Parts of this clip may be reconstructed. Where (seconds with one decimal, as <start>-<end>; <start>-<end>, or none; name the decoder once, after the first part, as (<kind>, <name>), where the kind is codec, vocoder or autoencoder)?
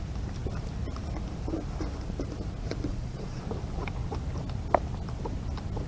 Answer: 2.9-3.4 (vocoder, Vocos)